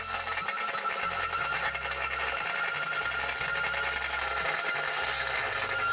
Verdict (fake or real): real